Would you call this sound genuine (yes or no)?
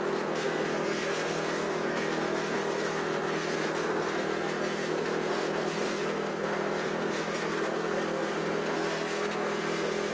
no